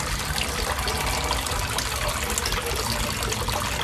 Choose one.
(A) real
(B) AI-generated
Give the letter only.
A